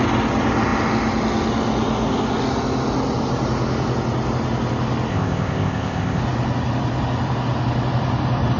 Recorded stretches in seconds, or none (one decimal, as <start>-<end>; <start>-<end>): 0.0-5.1; 6.2-8.6